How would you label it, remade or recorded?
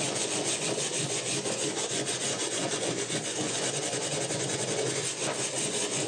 remade